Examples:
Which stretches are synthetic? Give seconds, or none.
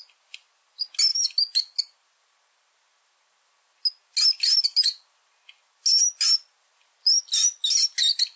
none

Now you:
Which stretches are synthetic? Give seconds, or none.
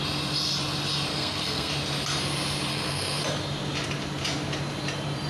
1.1-1.7 (codec, SNAC); 2.7-3.2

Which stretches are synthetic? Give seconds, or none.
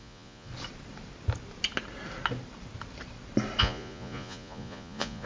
0.0-0.5 (vocoder, Vocos); 3.6-5.3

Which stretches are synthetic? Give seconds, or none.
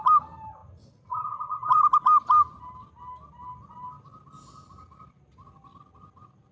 none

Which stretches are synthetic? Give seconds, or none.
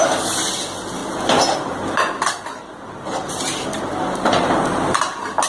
none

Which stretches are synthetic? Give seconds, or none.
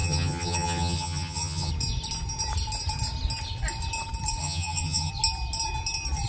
0.0-1.7 (vocoder, HiFi-GAN); 4.4-5.1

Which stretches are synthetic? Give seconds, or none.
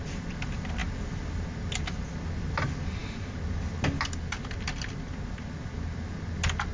none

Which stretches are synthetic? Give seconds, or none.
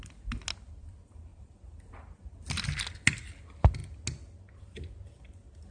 1.3-2.2 (vocoder, BigVGAN v2)